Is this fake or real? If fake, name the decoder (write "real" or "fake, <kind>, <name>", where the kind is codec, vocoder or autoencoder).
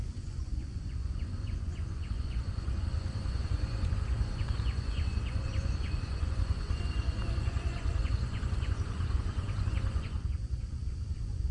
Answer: fake, vocoder, Vocos